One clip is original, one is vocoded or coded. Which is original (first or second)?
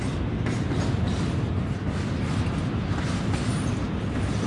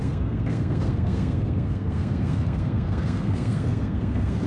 first